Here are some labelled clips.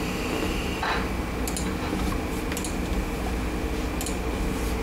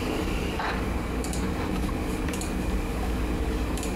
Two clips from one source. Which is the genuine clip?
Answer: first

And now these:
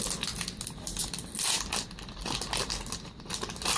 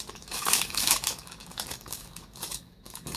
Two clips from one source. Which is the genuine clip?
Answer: first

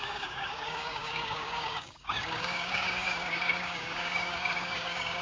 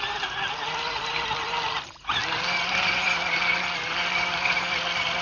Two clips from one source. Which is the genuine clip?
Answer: second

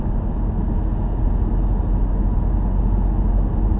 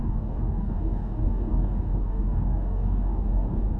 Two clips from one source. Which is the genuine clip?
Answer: first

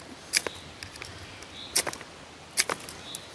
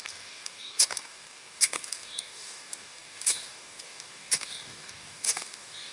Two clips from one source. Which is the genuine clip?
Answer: first